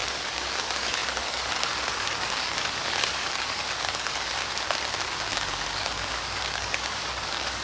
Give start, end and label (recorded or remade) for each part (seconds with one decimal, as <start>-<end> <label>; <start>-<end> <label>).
0.0-4.4 remade; 4.4-5.3 recorded; 5.3-7.6 remade